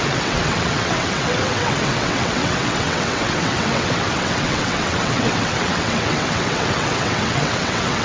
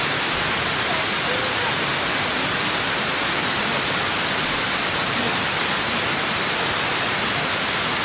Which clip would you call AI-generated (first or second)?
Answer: first